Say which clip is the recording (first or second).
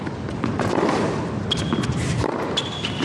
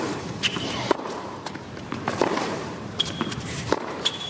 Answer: first